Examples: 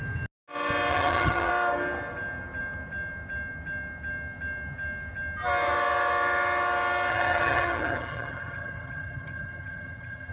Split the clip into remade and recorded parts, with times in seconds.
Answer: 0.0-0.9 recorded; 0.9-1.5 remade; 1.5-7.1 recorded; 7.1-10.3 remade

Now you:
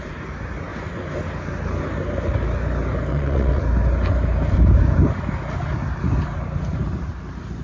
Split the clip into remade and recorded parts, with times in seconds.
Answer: 0.0-3.1 recorded; 3.1-3.6 remade; 3.6-7.6 recorded

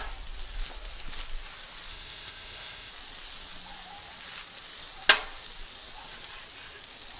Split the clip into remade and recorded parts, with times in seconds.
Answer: 0.0-1.9 recorded; 1.9-2.9 remade; 2.9-7.2 recorded

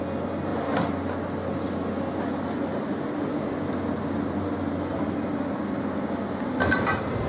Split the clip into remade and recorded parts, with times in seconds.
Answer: 0.0-7.3 recorded